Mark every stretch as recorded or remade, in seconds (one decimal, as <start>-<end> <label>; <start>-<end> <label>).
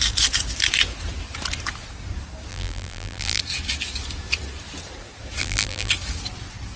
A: 0.0-2.5 recorded; 2.5-3.4 remade; 3.4-5.4 recorded; 5.4-5.9 remade; 5.9-6.8 recorded